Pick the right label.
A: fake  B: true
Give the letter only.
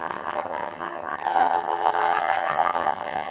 A